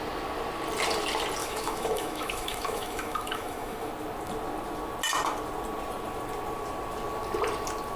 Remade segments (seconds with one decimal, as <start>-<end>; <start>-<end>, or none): 1.4-3.9